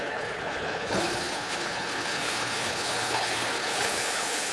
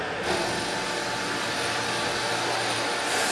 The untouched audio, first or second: second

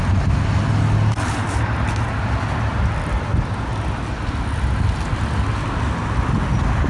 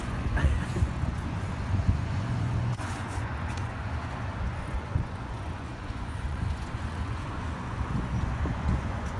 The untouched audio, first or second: first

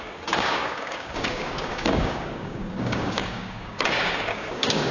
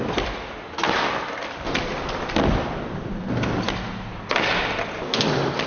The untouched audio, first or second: second